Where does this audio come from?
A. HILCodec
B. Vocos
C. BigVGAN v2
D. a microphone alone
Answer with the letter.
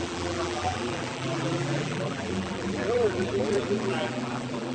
C